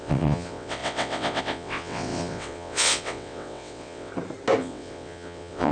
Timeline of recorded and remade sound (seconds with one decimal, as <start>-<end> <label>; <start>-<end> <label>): 0.0-4.1 remade; 4.1-4.6 recorded; 4.6-5.7 remade